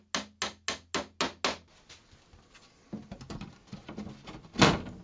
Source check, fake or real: real